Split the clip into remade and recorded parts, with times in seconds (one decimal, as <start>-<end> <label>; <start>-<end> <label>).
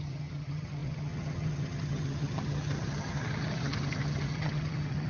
0.0-5.1 remade